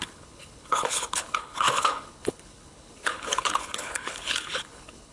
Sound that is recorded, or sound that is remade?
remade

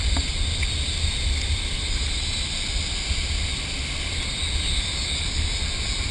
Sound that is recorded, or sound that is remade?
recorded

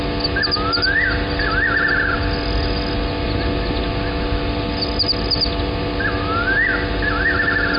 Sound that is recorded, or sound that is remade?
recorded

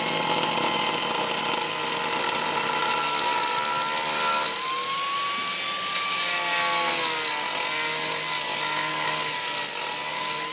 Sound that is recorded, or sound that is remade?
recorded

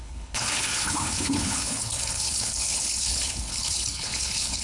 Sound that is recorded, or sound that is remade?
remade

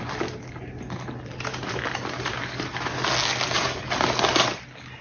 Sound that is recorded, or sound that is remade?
recorded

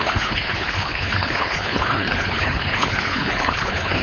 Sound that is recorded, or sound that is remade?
remade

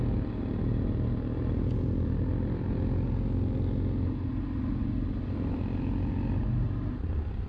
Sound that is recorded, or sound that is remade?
recorded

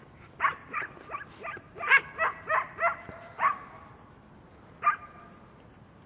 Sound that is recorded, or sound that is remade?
recorded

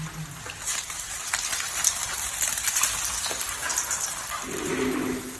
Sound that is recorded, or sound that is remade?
recorded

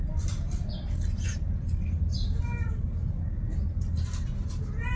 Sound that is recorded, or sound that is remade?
recorded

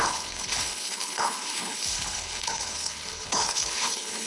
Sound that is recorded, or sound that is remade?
remade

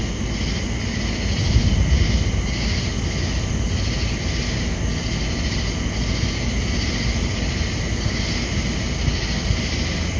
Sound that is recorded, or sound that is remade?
recorded